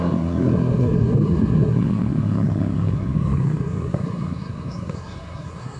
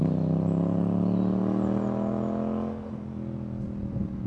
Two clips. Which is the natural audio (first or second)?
second